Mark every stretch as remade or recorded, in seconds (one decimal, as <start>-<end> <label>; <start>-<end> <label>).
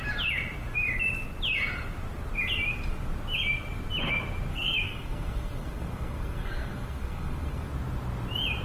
0.0-4.5 recorded; 4.5-7.7 remade; 7.7-8.6 recorded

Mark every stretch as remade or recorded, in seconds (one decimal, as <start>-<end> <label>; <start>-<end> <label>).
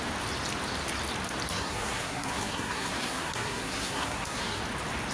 0.0-1.5 recorded; 1.5-4.6 remade; 4.6-5.1 recorded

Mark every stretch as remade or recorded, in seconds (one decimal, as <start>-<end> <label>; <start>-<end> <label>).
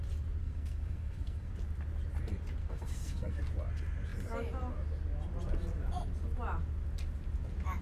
0.0-0.4 recorded; 0.4-1.5 remade; 1.5-2.6 recorded; 2.6-3.4 remade; 3.4-7.8 recorded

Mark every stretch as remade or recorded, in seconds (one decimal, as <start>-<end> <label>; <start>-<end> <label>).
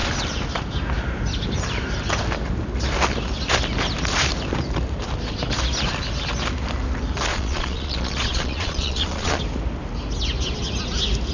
0.0-7.3 recorded; 7.3-9.4 remade; 9.4-11.3 recorded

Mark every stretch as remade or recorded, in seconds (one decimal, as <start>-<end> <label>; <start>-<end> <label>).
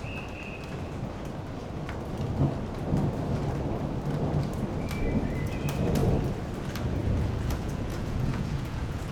0.0-7.0 recorded; 7.0-9.1 remade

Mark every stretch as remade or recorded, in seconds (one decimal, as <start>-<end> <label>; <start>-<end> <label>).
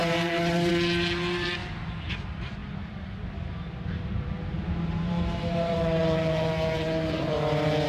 0.0-1.6 remade; 1.6-2.1 recorded; 2.1-7.9 remade